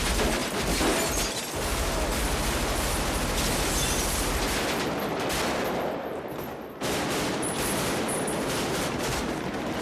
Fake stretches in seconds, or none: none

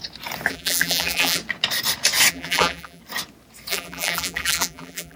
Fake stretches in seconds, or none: 0.5-1.4; 2.3-3.0; 3.7-5.2

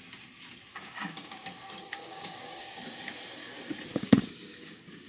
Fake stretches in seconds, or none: 0.7-2.6; 3.9-5.1

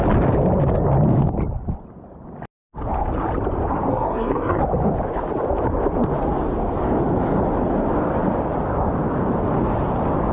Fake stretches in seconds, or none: 3.9-4.6

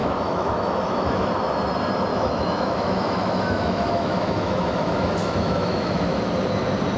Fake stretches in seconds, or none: 0.0-1.3; 2.1-6.2

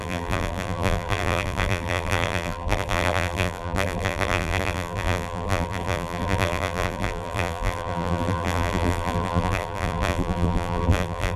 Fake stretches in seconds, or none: 0.0-11.4